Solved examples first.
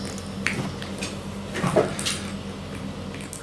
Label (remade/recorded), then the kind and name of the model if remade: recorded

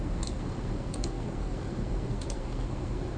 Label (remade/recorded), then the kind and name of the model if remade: remade, codec, SNAC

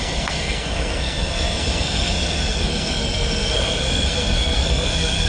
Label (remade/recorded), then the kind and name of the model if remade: remade, codec, SNAC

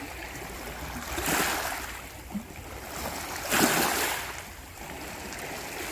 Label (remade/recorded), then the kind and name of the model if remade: recorded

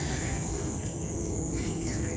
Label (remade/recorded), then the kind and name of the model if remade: remade, codec, SNAC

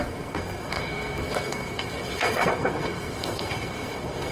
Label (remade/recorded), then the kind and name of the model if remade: remade, codec, SNAC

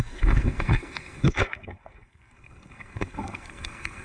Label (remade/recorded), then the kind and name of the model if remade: remade, codec, SNAC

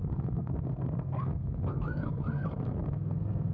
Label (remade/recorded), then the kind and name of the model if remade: remade, codec, SNAC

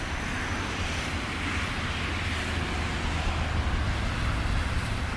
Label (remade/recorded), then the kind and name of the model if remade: recorded